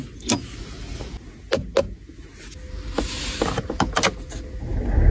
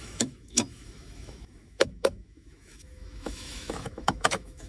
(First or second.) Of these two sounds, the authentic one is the first